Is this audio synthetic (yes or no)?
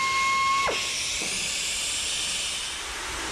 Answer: no